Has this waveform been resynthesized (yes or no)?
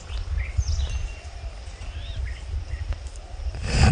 no